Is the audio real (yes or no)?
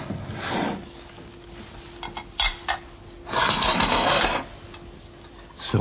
yes